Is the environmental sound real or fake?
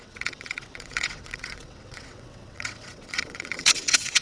fake